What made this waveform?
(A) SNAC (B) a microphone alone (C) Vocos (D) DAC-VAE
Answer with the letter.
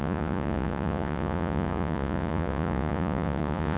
C